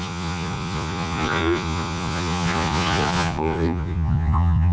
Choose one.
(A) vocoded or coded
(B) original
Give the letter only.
A